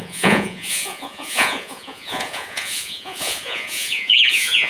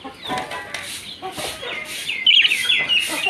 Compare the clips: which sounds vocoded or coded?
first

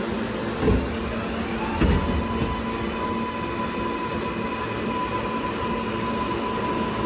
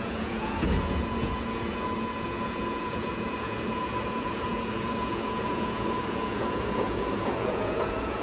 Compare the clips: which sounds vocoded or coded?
second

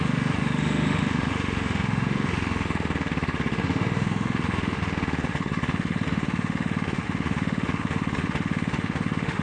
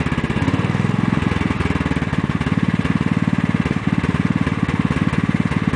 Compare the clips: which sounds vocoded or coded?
first